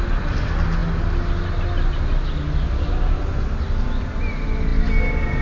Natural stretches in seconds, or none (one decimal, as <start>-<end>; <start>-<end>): 0.0-5.4